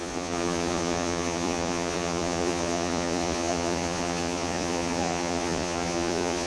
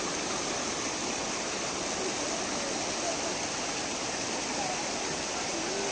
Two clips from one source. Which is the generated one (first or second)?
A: first